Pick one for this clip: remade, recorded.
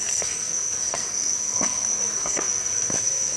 remade